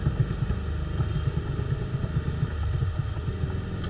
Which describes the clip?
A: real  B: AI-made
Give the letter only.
A